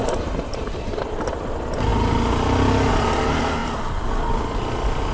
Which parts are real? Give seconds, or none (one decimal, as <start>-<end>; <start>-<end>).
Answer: 1.0-3.6; 4.2-5.1